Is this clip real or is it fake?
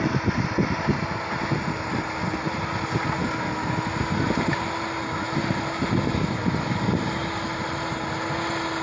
real